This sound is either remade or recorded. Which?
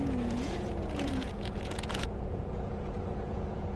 remade